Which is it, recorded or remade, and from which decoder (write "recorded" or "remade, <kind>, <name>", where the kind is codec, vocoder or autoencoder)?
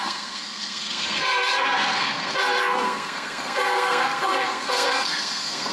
remade, codec, SNAC